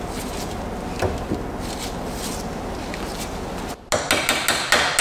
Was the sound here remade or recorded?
recorded